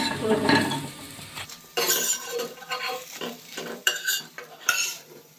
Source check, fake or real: fake